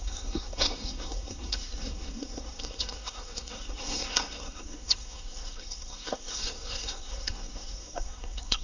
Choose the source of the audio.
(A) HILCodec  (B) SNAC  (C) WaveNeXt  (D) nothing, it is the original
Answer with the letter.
B